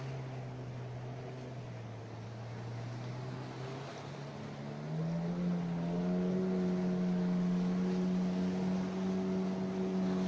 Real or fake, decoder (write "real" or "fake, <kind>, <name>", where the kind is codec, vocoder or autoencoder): real